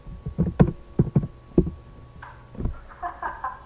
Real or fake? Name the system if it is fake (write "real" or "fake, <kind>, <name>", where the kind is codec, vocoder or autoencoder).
real